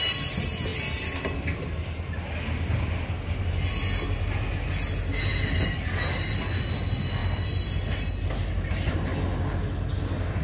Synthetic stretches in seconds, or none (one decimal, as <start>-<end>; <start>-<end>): none